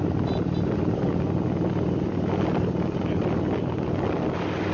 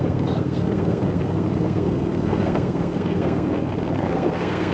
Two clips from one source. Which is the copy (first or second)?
second